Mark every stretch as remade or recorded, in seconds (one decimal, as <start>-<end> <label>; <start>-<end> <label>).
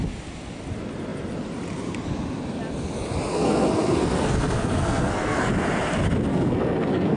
0.0-3.3 recorded; 3.3-5.5 remade; 5.5-6.3 recorded; 6.3-7.2 remade